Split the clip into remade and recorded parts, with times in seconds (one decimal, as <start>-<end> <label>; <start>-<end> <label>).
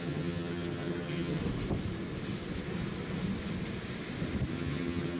0.0-1.4 remade; 1.4-4.5 recorded; 4.5-5.2 remade